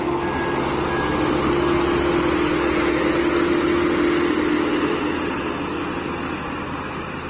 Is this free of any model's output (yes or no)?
yes